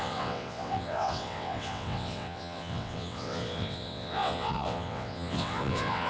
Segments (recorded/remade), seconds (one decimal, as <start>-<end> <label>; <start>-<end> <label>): 0.0-6.1 remade